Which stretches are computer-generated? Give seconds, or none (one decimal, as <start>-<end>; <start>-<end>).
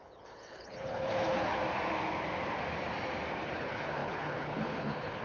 0.0-1.6; 3.4-5.2